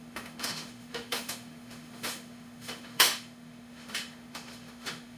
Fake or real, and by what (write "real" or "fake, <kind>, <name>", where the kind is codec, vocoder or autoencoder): fake, autoencoder, DAC-VAE